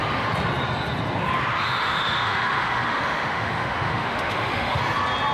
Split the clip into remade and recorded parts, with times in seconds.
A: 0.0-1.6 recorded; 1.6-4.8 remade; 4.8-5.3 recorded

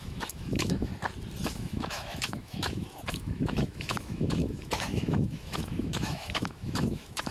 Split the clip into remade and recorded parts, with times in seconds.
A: 0.0-0.9 remade; 0.9-1.5 recorded; 1.5-7.3 remade

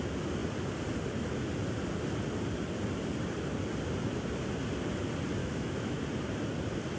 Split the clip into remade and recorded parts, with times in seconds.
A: 0.0-5.4 recorded; 5.4-6.0 remade; 6.0-7.0 recorded

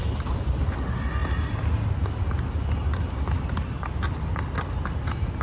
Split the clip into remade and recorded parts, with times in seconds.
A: 0.0-5.4 recorded

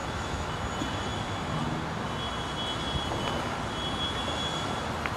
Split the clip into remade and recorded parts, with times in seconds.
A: 0.0-0.6 remade; 0.6-5.2 recorded

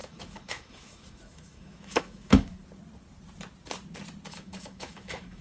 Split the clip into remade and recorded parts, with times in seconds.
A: 0.0-2.6 remade; 2.6-4.3 recorded; 4.3-5.4 remade

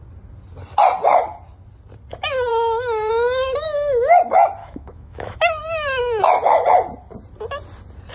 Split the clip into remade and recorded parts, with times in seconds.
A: 0.0-2.5 recorded; 2.5-3.1 remade; 3.1-4.6 recorded; 4.6-6.2 remade; 6.2-8.1 recorded